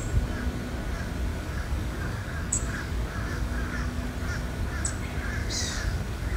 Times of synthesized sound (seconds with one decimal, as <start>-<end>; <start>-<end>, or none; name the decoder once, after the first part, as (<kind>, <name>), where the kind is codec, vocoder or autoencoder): 1.3-4.1 (codec, DAC); 5.4-6.4

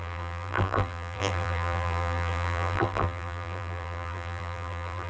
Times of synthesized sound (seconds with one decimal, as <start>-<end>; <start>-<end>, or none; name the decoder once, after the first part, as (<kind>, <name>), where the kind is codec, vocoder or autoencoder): 0.0-5.1 (vocoder, BigVGAN v2)